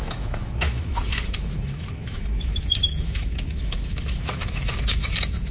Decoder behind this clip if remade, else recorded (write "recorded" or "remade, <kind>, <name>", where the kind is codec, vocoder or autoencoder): remade, autoencoder, DAC-VAE